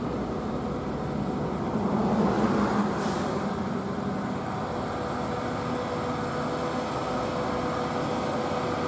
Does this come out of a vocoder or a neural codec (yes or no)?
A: no